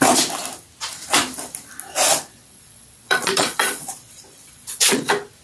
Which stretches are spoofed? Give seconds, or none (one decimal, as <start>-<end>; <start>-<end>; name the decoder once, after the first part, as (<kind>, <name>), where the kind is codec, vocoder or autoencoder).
2.3-5.0 (vocoder, Vocos)